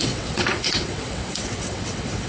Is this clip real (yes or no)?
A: no